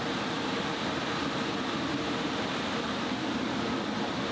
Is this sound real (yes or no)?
yes